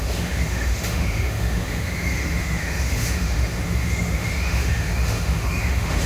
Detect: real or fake fake